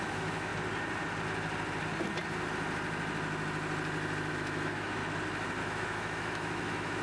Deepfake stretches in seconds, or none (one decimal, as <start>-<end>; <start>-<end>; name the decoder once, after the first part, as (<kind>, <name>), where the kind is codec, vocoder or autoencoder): 0.0-0.5 (autoencoder, DAC-VAE); 4.3-5.0; 5.6-7.0

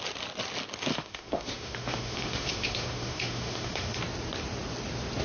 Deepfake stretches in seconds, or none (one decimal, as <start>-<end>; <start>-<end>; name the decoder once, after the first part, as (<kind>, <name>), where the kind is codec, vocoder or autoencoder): 0.9-4.0 (autoencoder, DAC-VAE)

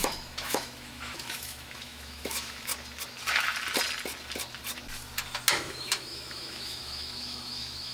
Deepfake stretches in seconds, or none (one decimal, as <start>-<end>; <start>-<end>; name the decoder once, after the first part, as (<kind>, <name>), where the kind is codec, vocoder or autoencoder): 0.0-2.7 (autoencoder, DAC-VAE); 5.5-7.9